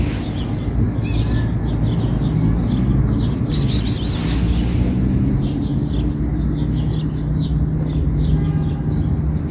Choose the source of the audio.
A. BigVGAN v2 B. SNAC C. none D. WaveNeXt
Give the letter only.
C